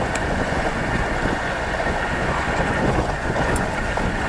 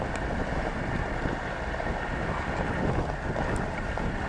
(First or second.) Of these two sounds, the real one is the second